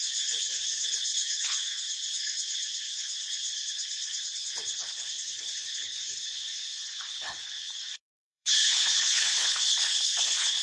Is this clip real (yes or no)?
no